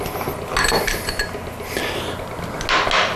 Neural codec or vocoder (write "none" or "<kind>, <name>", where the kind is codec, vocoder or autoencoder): none